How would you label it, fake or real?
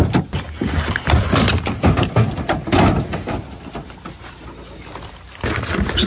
real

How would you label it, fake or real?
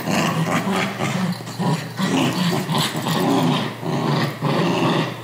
fake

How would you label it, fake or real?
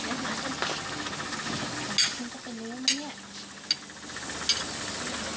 real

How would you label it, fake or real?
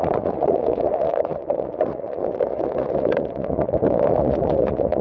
fake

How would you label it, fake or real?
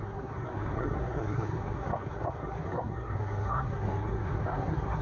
fake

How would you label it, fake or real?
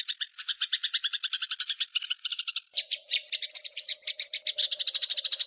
real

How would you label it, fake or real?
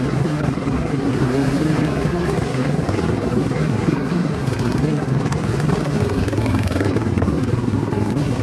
fake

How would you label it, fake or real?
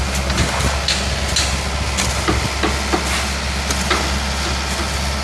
real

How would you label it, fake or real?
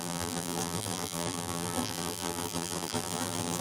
fake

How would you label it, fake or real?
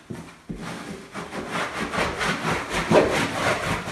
real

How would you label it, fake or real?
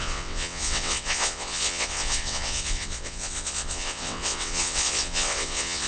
fake